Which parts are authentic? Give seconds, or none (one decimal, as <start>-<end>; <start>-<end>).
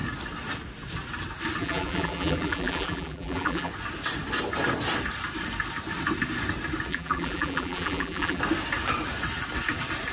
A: 0.0-1.6; 3.7-6.9; 8.4-10.1